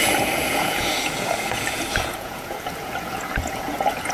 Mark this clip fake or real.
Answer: fake